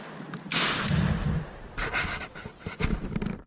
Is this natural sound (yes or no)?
yes